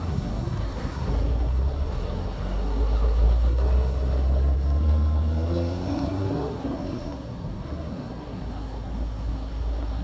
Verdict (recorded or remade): remade